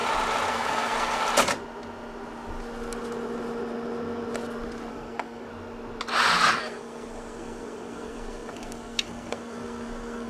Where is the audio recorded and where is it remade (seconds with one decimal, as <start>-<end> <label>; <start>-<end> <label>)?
0.0-0.5 recorded; 0.5-1.2 remade; 1.2-4.9 recorded; 4.9-5.5 remade; 5.5-6.6 recorded; 6.6-10.3 remade